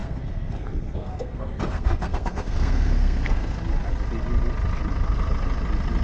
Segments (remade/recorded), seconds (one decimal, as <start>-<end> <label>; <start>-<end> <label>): 0.0-3.6 remade; 3.6-6.0 recorded